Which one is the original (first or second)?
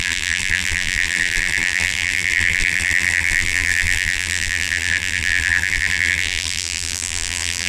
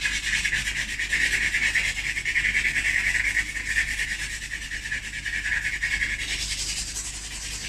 second